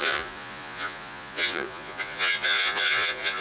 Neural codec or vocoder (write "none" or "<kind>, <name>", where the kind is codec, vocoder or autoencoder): vocoder, Vocos